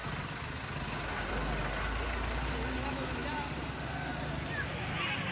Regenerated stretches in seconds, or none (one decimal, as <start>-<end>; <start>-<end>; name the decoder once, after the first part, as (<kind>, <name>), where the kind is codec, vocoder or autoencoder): none